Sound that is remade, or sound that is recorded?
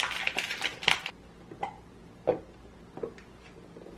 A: recorded